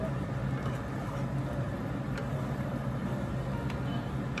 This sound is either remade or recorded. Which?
recorded